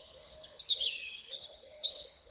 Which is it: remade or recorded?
remade